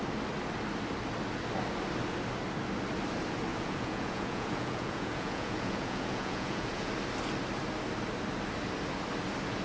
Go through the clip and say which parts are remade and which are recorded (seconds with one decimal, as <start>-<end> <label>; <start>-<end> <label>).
0.0-3.5 recorded; 3.5-6.9 remade; 6.9-9.6 recorded